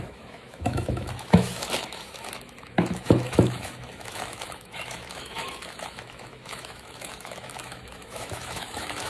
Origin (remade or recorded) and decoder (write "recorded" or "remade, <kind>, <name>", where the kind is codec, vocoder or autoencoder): remade, autoencoder, DAC-VAE